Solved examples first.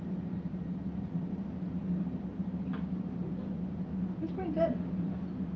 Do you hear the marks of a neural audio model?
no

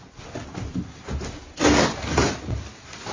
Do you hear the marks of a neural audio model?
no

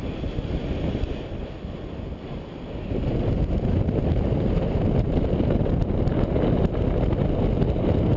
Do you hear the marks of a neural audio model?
no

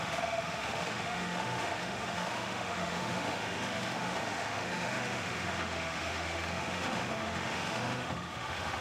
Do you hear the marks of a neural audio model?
yes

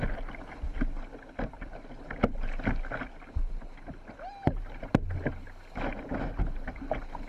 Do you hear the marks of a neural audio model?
no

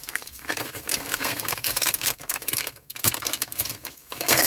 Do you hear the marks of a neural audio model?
yes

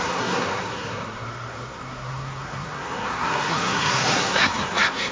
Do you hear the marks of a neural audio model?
yes